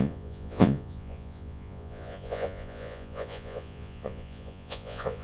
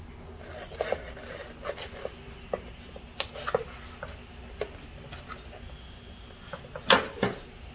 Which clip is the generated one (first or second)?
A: first